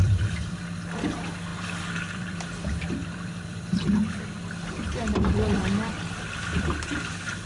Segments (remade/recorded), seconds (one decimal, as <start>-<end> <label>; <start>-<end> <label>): 0.0-0.6 remade; 0.6-1.5 recorded; 1.5-4.4 remade; 4.4-7.5 recorded